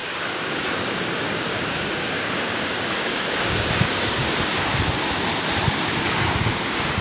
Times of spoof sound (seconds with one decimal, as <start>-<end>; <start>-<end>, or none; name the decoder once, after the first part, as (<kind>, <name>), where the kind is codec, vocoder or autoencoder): 0.0-4.7 (codec, DAC); 5.7-7.0